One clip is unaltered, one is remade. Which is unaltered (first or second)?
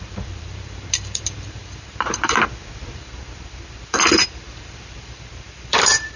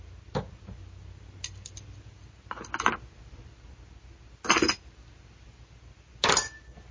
second